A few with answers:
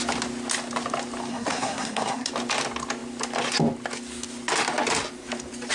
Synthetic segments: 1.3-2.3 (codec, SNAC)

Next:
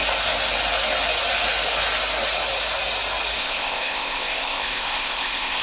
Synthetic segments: 3.4-5.6 (codec, ZipCodec)

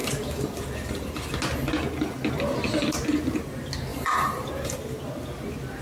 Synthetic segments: 0.0-1.4 (vocoder, BigVGAN v2); 3.9-5.0